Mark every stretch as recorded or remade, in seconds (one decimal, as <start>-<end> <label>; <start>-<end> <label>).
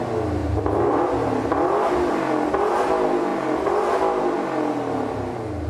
0.0-5.7 recorded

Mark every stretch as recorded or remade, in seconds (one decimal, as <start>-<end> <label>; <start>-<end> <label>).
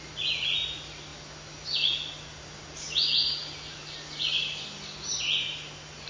0.0-6.1 recorded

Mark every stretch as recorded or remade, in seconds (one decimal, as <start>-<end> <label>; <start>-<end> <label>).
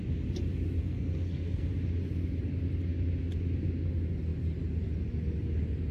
0.0-0.8 recorded; 0.8-1.7 remade; 1.7-5.9 recorded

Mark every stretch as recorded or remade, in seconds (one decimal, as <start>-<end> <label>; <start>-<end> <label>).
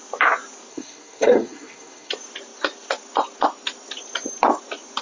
0.0-0.7 recorded; 0.7-2.1 remade; 2.1-5.0 recorded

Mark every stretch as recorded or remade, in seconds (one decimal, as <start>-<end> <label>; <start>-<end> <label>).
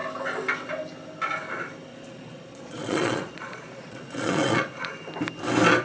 0.0-1.9 recorded; 1.9-4.9 remade; 4.9-5.8 recorded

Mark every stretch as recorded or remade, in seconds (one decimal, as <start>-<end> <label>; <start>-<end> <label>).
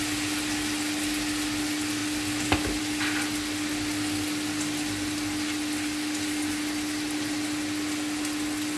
0.0-8.8 recorded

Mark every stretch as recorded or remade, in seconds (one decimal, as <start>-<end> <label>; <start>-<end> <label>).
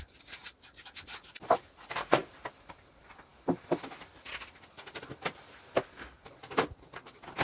0.0-7.4 recorded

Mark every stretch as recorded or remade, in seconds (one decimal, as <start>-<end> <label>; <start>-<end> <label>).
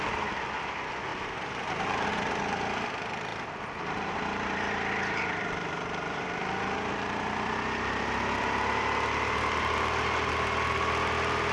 0.0-1.1 recorded; 1.1-2.1 remade; 2.1-3.3 recorded; 3.3-6.4 remade; 6.4-11.5 recorded